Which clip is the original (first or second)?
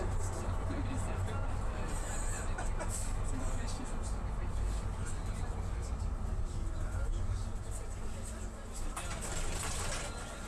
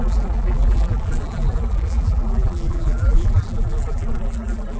first